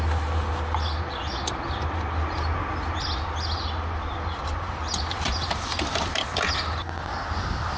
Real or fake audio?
real